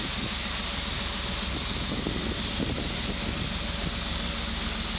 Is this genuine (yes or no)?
yes